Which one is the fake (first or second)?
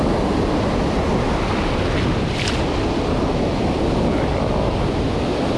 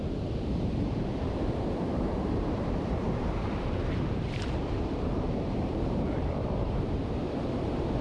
second